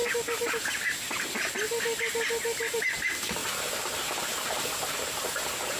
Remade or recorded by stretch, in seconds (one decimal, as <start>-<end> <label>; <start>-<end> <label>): 0.0-5.8 recorded